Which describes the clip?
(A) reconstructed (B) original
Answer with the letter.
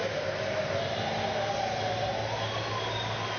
B